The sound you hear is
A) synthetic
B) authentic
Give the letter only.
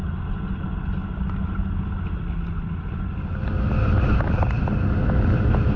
B